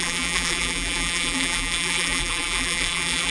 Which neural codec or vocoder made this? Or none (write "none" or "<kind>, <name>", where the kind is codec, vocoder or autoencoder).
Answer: vocoder, BigVGAN v2